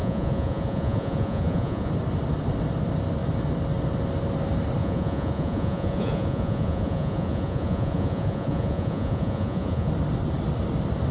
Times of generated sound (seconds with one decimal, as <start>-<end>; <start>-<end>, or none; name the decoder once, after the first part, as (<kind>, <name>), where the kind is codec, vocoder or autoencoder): 0.0-1.9 (vocoder, Vocos); 4.8-9.9